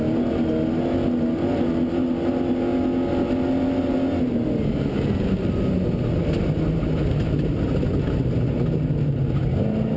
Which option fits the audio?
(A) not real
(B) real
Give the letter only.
B